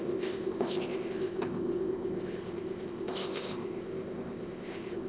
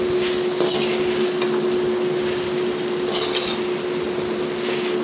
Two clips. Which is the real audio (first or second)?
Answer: second